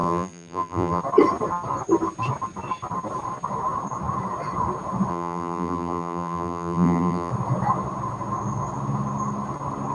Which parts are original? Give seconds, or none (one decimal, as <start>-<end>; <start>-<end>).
1.0-5.1; 7.3-9.9